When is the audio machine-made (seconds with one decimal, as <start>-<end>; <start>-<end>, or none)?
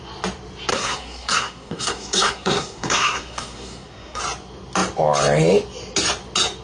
0.7-4.2